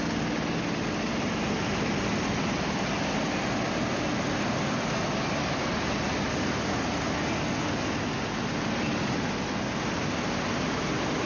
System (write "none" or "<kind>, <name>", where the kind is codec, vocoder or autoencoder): none